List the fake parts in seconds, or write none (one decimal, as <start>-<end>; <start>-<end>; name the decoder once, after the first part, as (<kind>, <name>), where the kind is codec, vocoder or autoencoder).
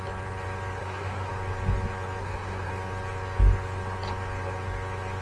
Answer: 0.8-1.3 (codec, SNAC); 2.2-2.7